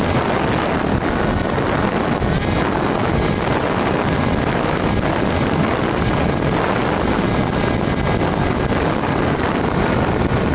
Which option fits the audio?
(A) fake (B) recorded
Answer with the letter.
B